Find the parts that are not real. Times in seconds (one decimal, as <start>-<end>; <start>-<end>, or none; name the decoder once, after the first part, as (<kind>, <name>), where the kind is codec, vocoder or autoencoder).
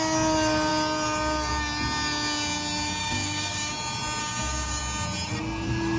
3.0-3.7 (codec, DAC); 4.2-4.8